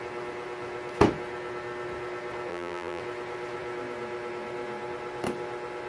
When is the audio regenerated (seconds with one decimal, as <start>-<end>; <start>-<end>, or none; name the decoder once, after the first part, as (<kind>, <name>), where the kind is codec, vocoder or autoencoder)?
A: 2.5-3.0 (vocoder, BigVGAN v2)